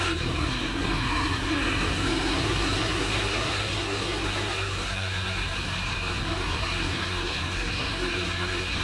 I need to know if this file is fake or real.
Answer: fake